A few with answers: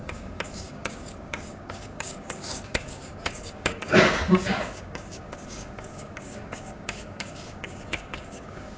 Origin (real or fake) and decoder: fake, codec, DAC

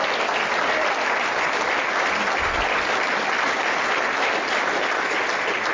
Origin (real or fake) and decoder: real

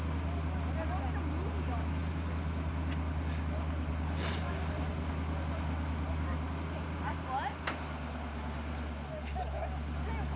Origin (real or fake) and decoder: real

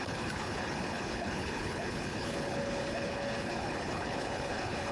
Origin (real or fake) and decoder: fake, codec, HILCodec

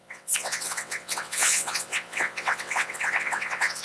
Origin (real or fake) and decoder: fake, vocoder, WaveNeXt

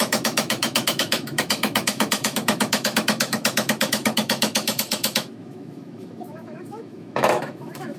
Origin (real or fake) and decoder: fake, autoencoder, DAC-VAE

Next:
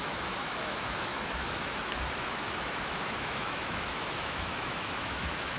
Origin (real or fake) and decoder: fake, autoencoder, DAC-VAE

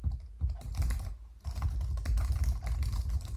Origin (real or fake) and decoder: real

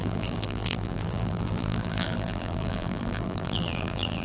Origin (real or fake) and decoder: fake, vocoder, BigVGAN v2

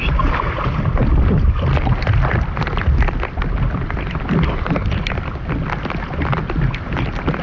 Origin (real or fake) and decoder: real